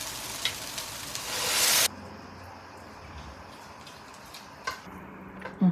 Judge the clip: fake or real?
real